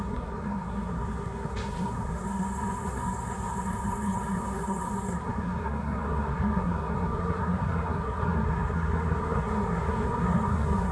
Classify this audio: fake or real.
fake